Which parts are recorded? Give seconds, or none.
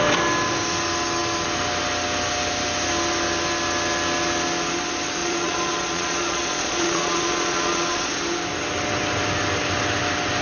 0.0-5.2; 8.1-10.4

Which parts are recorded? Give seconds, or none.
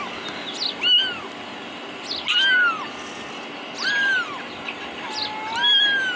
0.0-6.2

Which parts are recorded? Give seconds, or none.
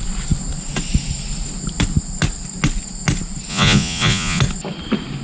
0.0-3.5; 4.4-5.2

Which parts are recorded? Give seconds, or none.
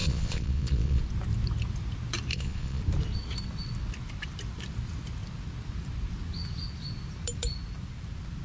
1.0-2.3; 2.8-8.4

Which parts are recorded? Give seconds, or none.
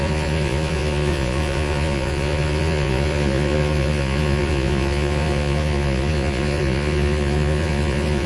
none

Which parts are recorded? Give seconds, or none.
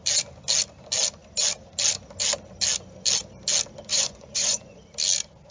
0.0-3.9; 4.8-5.5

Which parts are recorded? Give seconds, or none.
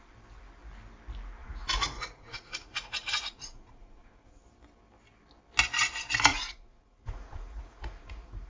0.0-1.4; 4.4-6.3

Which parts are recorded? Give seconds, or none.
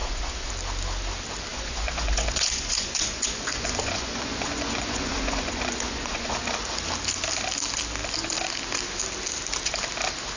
0.5-1.5; 6.4-10.4